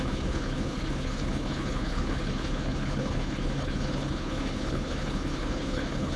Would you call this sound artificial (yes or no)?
yes